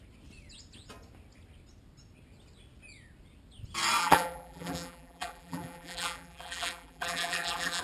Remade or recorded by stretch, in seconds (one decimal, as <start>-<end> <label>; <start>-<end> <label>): 0.0-4.0 recorded; 4.0-7.8 remade